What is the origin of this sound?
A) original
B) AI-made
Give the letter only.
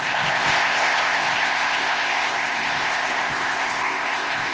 B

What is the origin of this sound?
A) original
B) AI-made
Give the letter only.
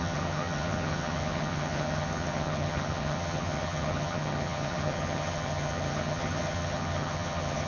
B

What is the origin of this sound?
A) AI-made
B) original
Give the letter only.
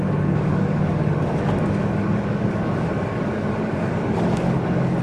A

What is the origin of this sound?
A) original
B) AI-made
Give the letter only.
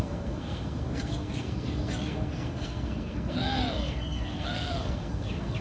B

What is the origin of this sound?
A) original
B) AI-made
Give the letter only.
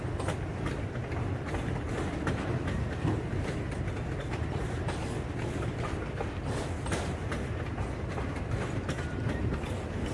A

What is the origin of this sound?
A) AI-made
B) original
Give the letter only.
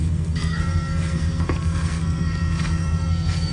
A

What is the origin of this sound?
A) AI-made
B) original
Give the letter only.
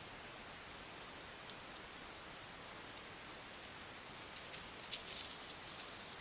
B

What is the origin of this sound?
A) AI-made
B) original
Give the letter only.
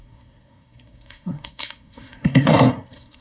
A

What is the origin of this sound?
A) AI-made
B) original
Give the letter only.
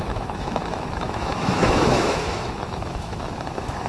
A